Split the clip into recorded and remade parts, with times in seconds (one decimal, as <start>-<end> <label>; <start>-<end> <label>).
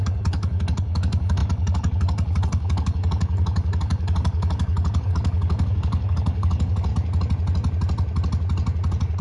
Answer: 0.0-6.9 remade; 6.9-9.2 recorded